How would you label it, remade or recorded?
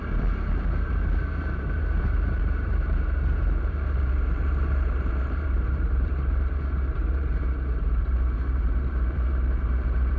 remade